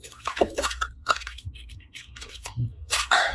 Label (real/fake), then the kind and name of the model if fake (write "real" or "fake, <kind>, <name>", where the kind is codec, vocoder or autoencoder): fake, codec, SNAC